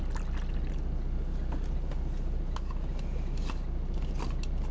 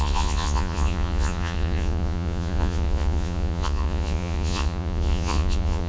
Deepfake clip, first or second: second